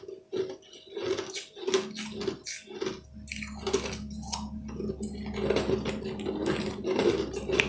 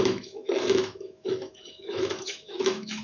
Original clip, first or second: first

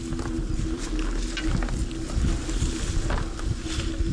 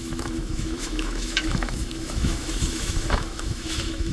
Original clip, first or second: first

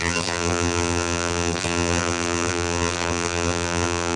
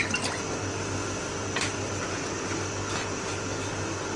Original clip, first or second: second